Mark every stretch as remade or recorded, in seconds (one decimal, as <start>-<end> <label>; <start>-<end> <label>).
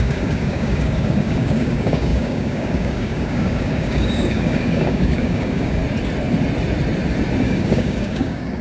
0.0-5.8 remade; 5.8-7.4 recorded; 7.4-8.6 remade